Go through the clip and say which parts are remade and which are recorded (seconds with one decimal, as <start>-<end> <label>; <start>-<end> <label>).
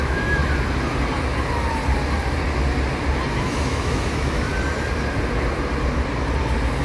0.0-0.4 remade; 0.4-3.4 recorded; 3.4-4.5 remade; 4.5-6.8 recorded